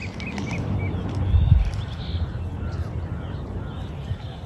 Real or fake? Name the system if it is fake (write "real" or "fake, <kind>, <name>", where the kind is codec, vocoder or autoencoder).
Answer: real